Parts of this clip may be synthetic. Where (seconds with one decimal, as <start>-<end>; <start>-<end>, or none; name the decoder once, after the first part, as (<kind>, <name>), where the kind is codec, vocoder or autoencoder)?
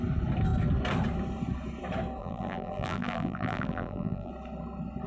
2.2-4.3 (vocoder, BigVGAN v2)